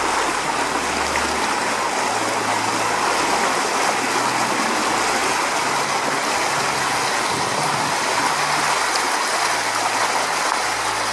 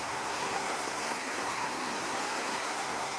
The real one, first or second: first